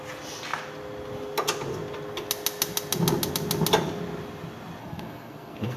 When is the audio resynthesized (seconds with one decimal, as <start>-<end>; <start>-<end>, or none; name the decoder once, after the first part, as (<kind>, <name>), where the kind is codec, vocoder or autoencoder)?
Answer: 4.8-5.8 (codec, SNAC)